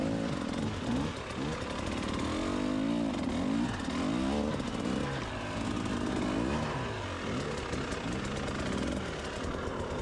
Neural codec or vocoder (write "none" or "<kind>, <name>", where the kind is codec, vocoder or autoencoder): none